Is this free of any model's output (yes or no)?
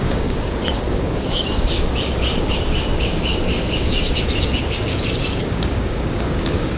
no